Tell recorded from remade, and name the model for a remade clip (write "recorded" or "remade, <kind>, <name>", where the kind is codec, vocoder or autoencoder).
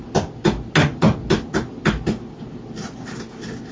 recorded